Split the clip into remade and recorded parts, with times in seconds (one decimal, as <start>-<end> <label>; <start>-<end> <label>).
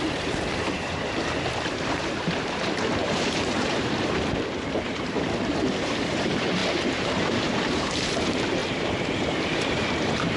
0.0-10.4 remade